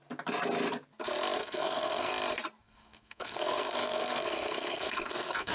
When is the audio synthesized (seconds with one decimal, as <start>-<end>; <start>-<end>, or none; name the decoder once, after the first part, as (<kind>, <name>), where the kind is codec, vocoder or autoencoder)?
1.4-2.1 (codec, SNAC); 2.6-5.5